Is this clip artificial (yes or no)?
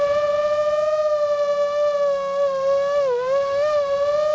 no